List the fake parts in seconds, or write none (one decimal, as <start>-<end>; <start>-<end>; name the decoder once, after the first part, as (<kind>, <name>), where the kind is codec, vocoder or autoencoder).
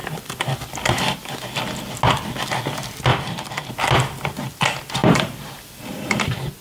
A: 0.0-1.6 (vocoder, BigVGAN v2); 3.1-3.7; 5.0-6.6